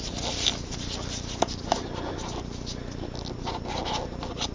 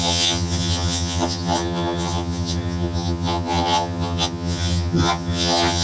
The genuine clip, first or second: first